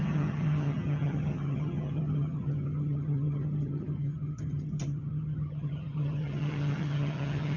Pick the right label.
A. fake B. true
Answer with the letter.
A